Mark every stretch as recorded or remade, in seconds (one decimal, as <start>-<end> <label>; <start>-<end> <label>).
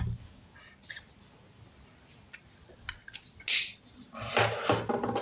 0.0-5.2 recorded